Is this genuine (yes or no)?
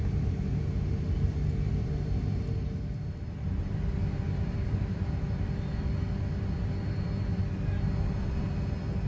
yes